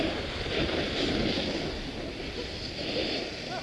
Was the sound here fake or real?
real